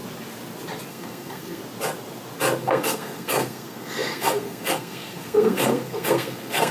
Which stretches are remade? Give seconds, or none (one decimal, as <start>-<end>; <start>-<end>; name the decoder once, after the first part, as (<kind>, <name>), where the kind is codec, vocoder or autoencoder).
0.9-1.6 (codec, SNAC); 2.6-6.7